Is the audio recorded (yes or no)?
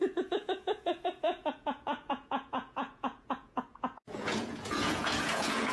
no